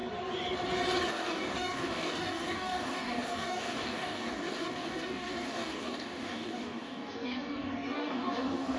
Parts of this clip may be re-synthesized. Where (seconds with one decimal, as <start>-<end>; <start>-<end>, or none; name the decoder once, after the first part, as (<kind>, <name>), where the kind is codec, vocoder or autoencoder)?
1.1-8.8 (codec, DAC)